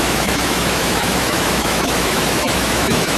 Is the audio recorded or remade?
remade